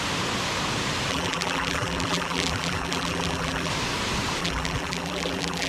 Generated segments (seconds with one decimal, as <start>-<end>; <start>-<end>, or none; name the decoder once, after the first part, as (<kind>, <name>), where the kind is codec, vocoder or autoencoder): 1.1-3.7 (vocoder, BigVGAN v2); 4.4-5.7